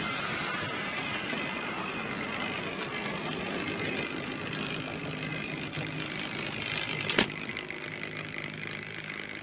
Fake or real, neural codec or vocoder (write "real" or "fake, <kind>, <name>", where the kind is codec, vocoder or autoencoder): real